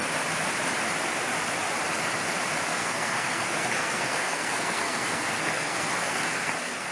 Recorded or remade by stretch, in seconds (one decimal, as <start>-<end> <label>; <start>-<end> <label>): 0.0-2.7 recorded; 2.7-6.9 remade